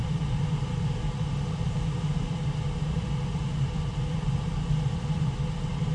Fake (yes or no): no